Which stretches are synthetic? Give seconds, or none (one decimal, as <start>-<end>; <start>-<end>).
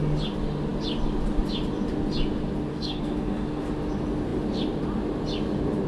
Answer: 2.7-3.6